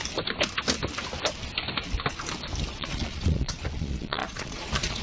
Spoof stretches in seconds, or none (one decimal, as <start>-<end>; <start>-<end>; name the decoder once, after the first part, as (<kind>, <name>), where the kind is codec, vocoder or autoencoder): 2.7-5.0 (vocoder, Vocos)